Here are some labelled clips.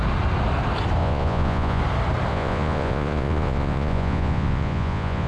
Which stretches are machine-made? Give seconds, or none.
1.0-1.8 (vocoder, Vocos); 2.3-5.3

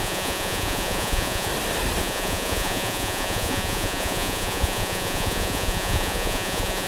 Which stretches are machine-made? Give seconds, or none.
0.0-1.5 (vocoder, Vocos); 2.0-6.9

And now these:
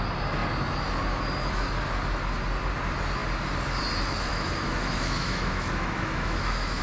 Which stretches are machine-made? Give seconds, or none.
4.3-6.8 (autoencoder, DAC-VAE)

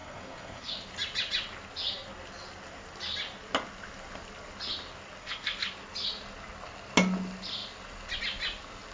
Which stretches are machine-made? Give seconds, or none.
0.0-0.7 (codec, SNAC); 5.2-5.7

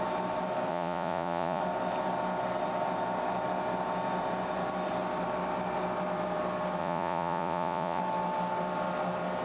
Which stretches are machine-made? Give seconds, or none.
0.7-1.6 (vocoder, Vocos); 6.8-8.0

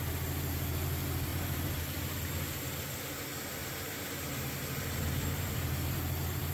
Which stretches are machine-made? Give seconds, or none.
1.3-2.3 (vocoder, BigVGAN v2); 3.6-6.5

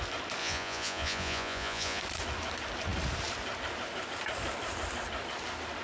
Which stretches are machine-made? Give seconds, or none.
0.4-2.0 (vocoder, Vocos)